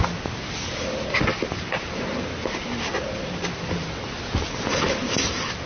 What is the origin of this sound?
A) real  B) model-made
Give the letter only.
A